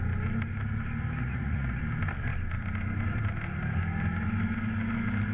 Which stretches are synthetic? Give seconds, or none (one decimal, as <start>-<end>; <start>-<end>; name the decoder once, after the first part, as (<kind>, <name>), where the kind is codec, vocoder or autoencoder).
1.2-1.8 (vocoder, Vocos)